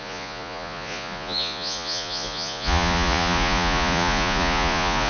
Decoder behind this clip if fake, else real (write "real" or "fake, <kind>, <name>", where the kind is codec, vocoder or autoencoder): fake, vocoder, Vocos